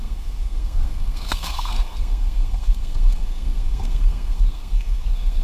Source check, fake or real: fake